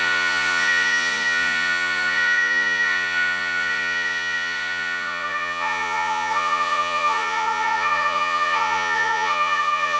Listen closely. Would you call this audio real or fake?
fake